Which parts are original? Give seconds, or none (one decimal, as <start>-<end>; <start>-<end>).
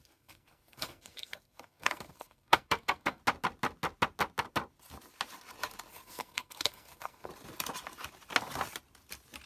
3.2-5.9; 7.3-9.5